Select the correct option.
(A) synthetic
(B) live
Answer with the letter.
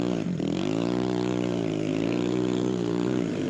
A